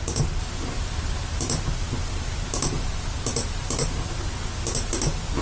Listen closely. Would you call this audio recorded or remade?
recorded